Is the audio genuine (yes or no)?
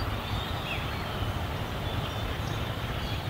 yes